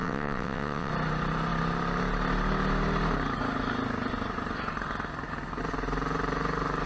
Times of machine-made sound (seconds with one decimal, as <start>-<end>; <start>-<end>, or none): 0.0-0.9